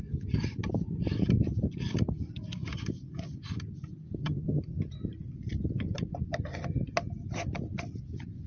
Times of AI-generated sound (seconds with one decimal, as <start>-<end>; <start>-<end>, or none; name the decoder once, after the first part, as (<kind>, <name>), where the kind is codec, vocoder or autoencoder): 4.2-4.8 (vocoder, HiFi-GAN)